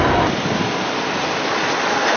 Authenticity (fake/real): real